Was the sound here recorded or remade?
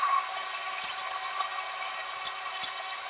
recorded